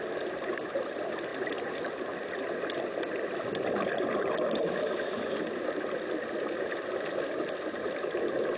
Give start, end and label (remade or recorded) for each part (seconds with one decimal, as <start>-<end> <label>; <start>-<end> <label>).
0.0-1.3 recorded; 1.3-1.9 remade; 1.9-8.6 recorded